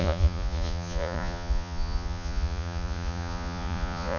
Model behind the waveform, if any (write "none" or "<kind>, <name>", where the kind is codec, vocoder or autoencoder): vocoder, Vocos